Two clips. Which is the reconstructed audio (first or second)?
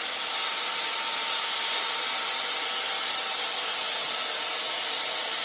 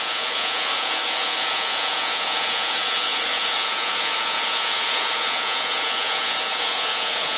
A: second